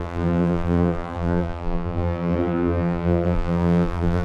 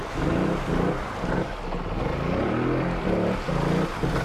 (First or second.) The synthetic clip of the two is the first